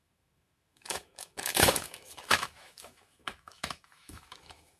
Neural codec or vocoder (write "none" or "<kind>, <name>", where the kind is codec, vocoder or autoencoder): autoencoder, DAC-VAE